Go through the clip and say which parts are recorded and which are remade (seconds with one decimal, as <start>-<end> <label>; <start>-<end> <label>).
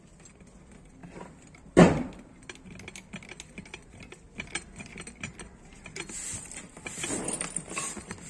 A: 0.0-8.3 recorded